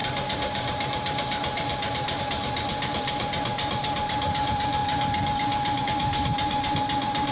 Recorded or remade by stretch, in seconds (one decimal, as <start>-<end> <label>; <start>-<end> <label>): 0.0-4.8 remade; 4.8-5.8 recorded; 5.8-7.3 remade